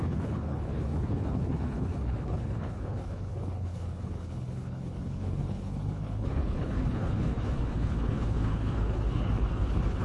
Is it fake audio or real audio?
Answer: fake